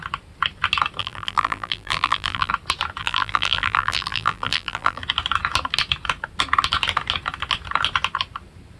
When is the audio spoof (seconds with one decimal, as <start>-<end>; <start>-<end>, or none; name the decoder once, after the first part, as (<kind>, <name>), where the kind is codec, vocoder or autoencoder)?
1.0-2.5 (vocoder, BigVGAN v2); 3.0-5.0